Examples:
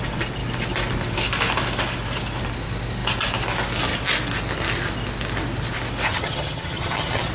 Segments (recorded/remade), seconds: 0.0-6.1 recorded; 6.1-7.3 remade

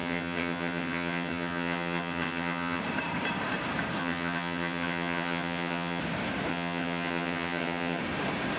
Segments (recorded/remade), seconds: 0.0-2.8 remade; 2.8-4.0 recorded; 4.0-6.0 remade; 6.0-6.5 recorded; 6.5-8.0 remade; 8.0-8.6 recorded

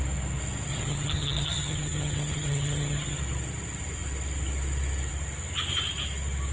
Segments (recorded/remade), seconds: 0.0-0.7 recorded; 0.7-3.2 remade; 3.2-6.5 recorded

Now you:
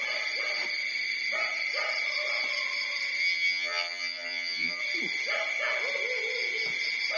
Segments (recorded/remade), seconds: 0.0-3.2 recorded; 3.2-4.8 remade; 4.8-7.2 recorded

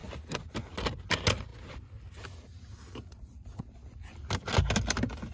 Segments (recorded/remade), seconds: 0.0-5.3 recorded